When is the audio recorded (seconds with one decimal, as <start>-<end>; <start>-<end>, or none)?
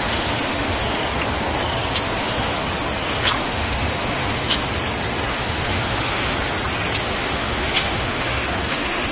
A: 1.0-2.2; 2.6-3.4; 4.6-5.3; 6.3-7.0